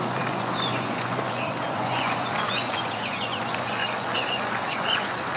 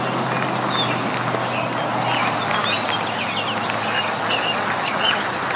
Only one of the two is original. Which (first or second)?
second